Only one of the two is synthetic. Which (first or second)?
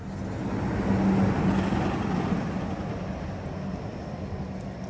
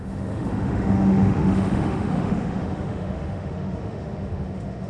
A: second